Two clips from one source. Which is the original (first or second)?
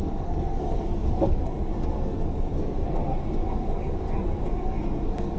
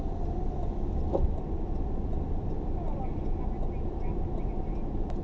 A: second